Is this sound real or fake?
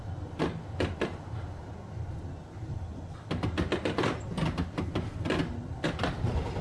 real